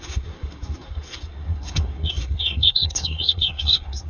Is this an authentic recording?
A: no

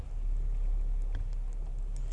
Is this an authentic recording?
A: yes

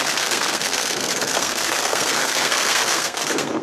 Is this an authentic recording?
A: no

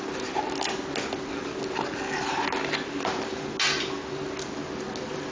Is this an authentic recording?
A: yes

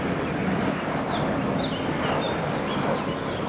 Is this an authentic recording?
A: yes